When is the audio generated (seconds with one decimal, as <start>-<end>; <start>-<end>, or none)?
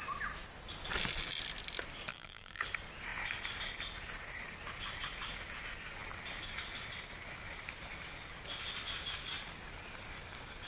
2.1-2.6